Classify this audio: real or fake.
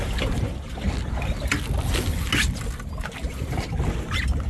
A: real